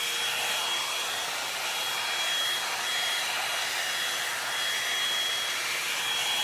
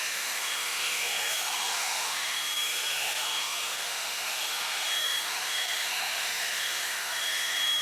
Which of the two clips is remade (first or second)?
second